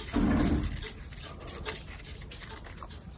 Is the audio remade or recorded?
recorded